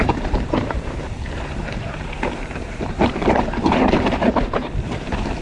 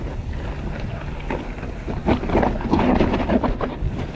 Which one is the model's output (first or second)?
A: first